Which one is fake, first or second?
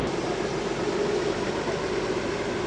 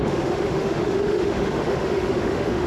second